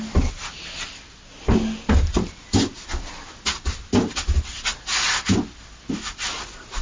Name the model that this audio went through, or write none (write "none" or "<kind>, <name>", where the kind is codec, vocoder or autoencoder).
none